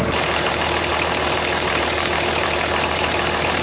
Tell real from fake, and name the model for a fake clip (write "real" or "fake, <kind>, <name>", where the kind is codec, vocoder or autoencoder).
fake, vocoder, BigVGAN v2